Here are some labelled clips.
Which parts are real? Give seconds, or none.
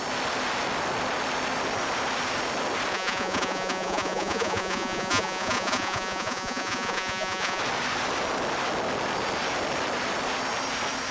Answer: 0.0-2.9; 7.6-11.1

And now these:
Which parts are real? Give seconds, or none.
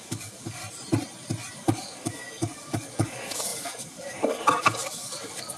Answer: 0.6-1.5